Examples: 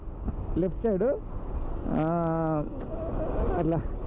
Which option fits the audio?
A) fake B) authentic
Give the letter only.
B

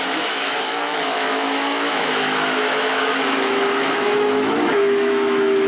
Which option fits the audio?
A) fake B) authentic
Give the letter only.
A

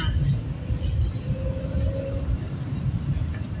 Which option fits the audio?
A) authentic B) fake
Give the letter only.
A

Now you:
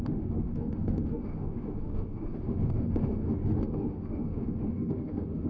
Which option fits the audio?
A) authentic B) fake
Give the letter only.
B